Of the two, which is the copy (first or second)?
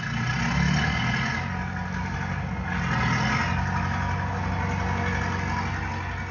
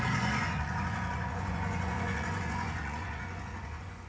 second